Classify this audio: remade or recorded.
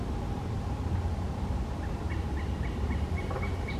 recorded